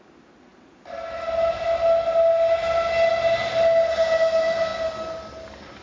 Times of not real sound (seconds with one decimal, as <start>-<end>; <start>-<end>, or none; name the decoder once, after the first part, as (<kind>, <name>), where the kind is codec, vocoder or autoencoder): none